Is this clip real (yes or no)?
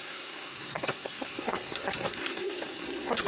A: no